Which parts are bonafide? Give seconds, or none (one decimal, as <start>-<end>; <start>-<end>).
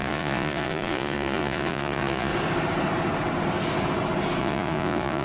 2.3-4.4